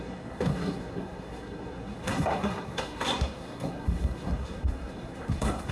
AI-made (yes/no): yes